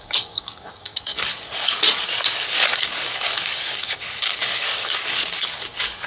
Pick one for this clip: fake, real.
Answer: fake